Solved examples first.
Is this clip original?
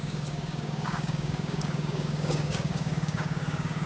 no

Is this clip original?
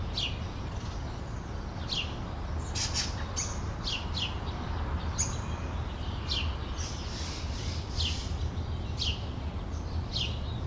yes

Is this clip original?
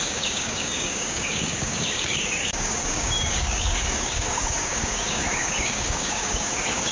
no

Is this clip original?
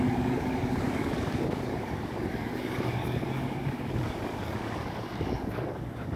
no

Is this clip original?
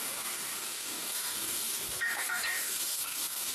no